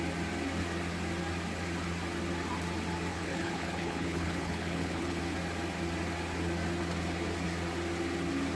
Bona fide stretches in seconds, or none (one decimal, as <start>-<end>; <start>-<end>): 0.0-3.1; 5.2-8.6